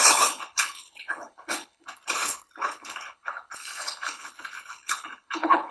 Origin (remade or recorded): remade